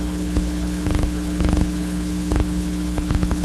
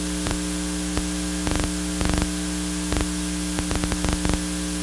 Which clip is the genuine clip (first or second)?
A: second